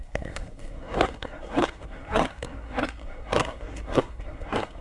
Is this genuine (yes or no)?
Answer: no